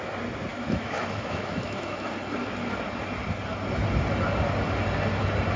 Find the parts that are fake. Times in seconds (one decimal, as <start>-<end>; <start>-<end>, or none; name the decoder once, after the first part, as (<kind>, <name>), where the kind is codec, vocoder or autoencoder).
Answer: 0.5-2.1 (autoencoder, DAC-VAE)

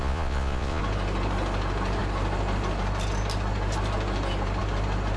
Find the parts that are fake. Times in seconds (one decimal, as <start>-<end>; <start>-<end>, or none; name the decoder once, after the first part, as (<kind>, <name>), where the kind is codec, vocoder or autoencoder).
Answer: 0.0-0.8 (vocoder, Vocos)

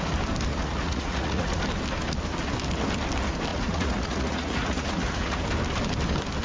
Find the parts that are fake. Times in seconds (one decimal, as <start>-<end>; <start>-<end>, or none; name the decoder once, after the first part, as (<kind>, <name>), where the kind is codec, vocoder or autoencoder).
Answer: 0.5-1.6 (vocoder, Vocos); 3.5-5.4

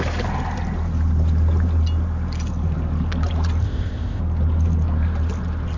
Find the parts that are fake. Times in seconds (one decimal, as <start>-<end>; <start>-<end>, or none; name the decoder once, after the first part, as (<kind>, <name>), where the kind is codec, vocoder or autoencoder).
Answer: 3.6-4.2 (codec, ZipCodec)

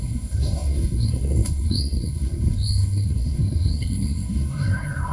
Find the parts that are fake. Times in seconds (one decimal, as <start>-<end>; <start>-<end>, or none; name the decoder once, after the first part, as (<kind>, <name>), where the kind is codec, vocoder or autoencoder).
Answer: 0.0-5.1 (codec, SNAC)